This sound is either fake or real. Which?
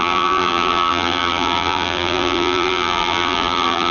fake